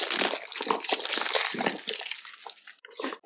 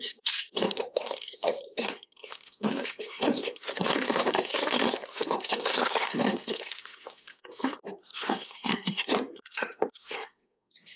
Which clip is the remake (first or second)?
second